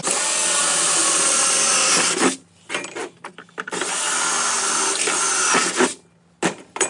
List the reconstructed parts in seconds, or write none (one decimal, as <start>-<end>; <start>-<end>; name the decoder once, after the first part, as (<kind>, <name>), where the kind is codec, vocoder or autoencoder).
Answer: none